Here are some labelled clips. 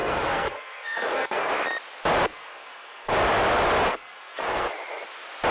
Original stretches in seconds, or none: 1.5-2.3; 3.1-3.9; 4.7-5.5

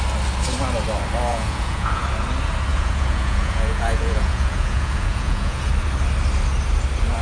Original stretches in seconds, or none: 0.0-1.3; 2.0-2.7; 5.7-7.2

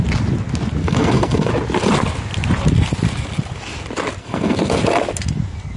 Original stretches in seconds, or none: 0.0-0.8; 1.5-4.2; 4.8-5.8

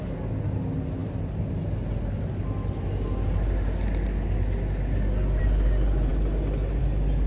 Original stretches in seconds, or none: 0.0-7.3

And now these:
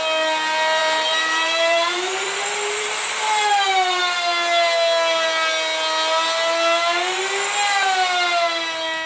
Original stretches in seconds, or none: 0.0-0.8; 4.0-9.1